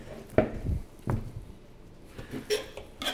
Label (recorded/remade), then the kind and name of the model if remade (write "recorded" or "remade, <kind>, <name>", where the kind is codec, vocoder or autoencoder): recorded